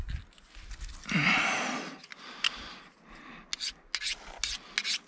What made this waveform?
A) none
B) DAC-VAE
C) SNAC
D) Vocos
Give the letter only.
A